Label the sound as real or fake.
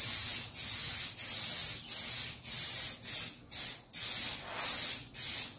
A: real